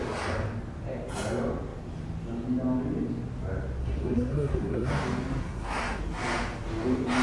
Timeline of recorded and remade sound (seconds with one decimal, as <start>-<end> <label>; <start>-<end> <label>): 0.0-3.8 recorded; 3.8-4.9 remade; 4.9-5.4 recorded; 5.4-6.0 remade; 6.0-7.2 recorded